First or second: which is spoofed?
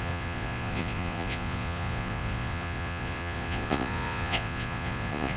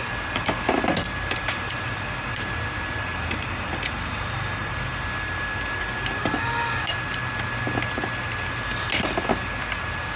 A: first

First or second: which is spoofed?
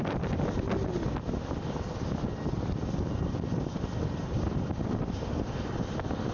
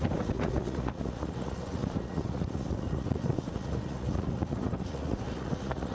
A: second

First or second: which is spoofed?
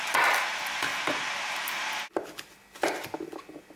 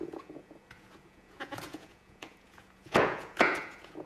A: second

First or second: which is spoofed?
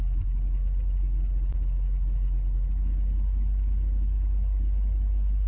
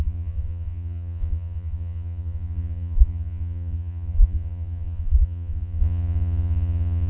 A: second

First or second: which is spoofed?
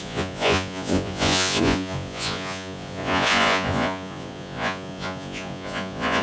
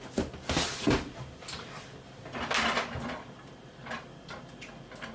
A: first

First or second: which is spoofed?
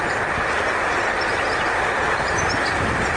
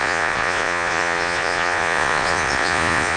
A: second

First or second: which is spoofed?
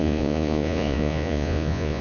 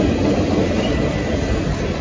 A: first